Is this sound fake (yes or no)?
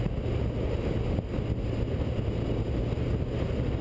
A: no